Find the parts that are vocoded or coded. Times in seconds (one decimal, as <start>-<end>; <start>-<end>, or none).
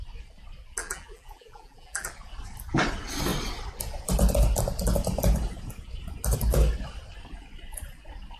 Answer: 0.8-2.1